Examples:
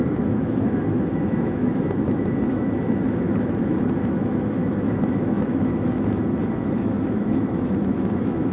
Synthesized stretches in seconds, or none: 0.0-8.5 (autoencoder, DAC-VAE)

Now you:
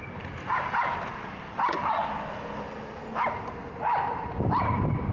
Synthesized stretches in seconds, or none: 0.0-2.0 (vocoder, BigVGAN v2); 4.2-5.1